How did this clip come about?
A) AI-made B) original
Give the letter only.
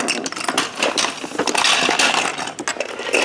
B